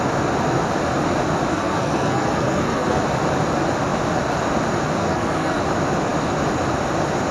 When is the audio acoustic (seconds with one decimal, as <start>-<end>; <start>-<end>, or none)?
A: 0.0-1.5; 3.0-5.0; 5.6-7.3